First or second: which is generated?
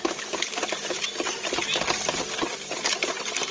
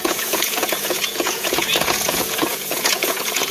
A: second